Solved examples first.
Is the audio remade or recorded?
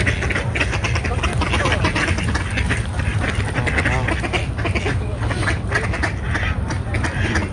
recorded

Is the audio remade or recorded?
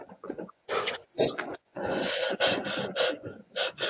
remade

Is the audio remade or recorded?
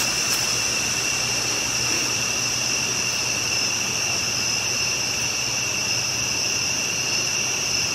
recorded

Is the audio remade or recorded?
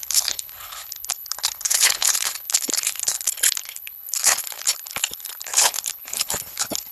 remade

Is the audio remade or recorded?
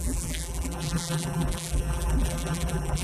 remade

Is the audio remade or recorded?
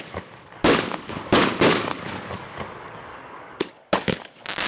remade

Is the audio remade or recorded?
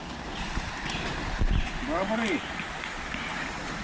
recorded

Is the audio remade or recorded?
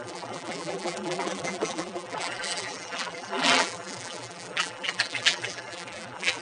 remade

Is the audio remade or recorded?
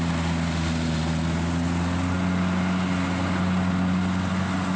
recorded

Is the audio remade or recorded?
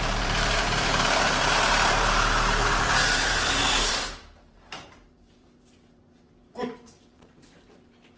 remade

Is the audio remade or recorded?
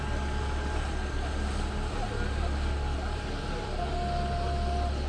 recorded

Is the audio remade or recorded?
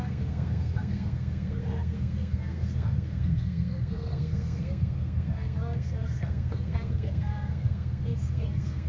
remade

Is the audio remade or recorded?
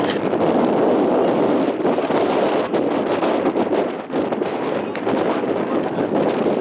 recorded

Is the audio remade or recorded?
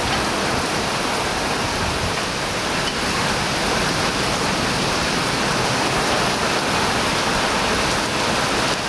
recorded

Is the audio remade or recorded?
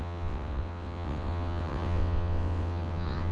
remade